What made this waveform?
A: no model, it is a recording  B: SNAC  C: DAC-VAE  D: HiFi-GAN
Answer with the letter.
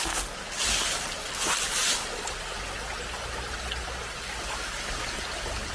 A